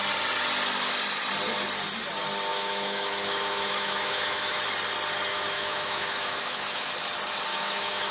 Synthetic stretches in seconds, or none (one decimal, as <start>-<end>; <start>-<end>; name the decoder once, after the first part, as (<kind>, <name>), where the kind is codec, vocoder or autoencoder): 2.5-4.6 (autoencoder, DAC-VAE); 5.3-6.9; 7.5-8.1